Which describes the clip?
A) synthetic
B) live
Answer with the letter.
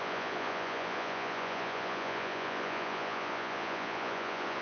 A